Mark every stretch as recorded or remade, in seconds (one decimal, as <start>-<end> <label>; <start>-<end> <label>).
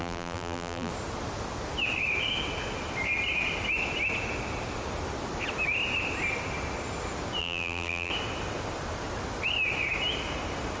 0.0-0.9 remade; 0.9-7.4 recorded; 7.4-8.1 remade; 8.1-10.8 recorded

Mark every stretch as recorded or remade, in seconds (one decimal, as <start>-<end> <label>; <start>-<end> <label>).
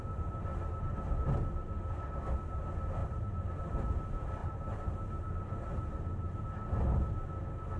0.0-0.5 recorded; 0.5-1.1 remade; 1.1-3.0 recorded; 3.0-3.5 remade; 3.5-4.4 recorded; 4.4-6.4 remade; 6.4-7.8 recorded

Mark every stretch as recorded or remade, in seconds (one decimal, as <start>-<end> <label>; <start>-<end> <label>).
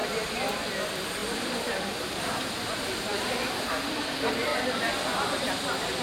0.0-0.7 recorded; 0.7-6.0 remade